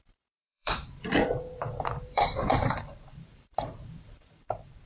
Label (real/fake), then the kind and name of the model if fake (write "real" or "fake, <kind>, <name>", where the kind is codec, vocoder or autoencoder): fake, vocoder, BigVGAN v2